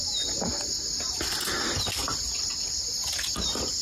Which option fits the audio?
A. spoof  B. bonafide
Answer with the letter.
B